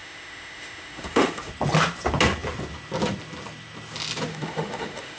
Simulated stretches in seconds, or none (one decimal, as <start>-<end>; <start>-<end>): 0.0-1.5; 4.3-5.2